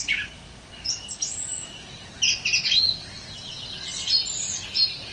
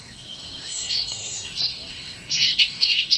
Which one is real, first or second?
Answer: first